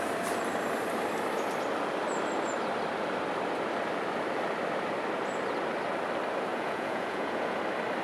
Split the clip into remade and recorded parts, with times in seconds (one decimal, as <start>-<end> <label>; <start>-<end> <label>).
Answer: 0.0-6.5 recorded; 6.5-7.6 remade; 7.6-8.0 recorded